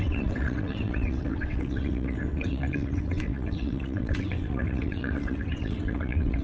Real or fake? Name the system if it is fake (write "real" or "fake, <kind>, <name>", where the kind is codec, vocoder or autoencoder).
fake, vocoder, WaveNeXt